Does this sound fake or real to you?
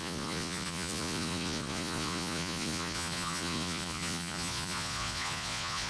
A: fake